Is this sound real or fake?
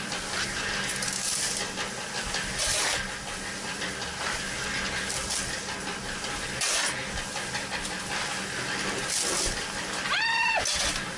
real